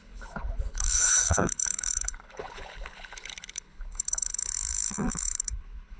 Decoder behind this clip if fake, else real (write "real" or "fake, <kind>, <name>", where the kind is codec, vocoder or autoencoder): fake, codec, HILCodec